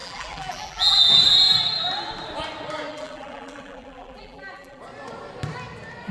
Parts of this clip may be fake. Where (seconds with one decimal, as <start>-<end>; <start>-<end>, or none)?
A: 0.0-1.0; 2.9-4.8